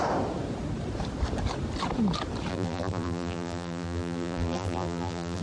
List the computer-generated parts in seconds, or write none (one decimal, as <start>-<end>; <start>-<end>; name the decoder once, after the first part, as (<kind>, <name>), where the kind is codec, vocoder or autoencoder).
2.5-5.4 (vocoder, BigVGAN v2)